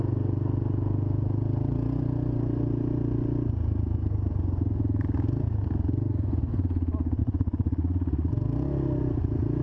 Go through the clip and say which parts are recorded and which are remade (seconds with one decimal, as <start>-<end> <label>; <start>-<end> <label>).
0.0-7.2 recorded; 7.2-8.3 remade; 8.3-9.6 recorded